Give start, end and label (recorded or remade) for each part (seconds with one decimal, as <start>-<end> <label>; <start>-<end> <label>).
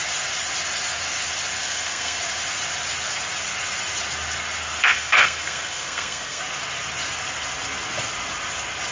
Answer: 0.0-1.6 recorded; 1.6-2.2 remade; 2.2-4.8 recorded; 4.8-6.4 remade; 6.4-8.9 recorded